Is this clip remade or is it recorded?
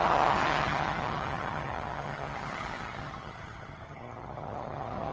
remade